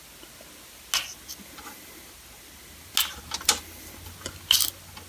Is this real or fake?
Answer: real